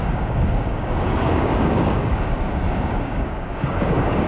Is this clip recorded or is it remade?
remade